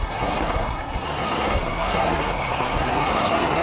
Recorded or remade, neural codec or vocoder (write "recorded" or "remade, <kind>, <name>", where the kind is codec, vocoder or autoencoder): remade, codec, SNAC